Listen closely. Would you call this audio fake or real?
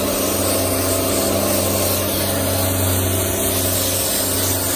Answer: real